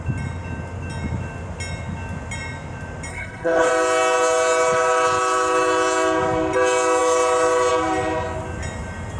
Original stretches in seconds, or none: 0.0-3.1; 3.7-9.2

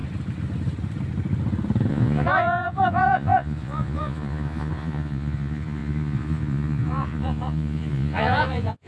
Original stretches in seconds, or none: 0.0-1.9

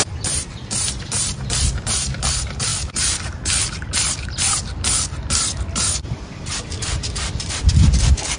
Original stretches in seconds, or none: none